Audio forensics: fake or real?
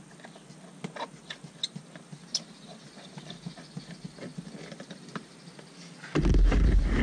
real